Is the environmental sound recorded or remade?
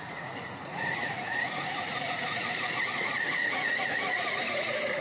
remade